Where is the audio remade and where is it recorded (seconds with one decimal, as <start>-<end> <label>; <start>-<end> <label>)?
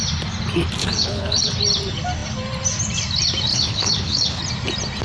0.0-0.8 recorded; 0.8-1.5 remade; 1.5-3.5 recorded; 3.5-4.4 remade; 4.4-5.0 recorded